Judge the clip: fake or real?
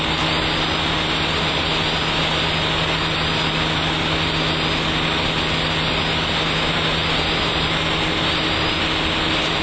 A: real